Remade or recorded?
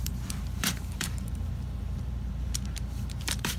remade